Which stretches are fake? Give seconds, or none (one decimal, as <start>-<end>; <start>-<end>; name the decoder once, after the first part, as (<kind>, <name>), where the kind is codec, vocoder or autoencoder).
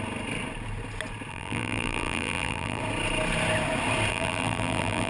1.3-2.8 (vocoder, BigVGAN v2); 4.1-5.1